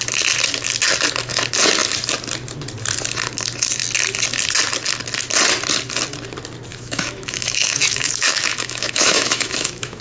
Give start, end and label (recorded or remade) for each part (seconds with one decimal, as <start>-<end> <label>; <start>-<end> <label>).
0.0-6.7 recorded; 6.7-10.0 remade